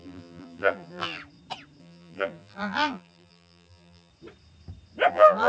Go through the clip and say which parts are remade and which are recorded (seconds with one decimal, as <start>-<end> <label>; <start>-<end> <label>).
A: 0.0-1.2 remade; 1.2-1.8 recorded; 1.8-4.1 remade; 4.1-5.1 recorded; 5.1-5.5 remade